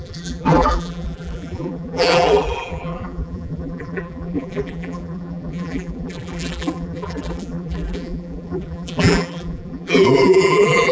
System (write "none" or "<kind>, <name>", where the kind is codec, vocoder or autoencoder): vocoder, BigVGAN v2